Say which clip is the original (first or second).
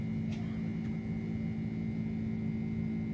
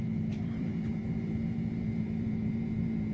first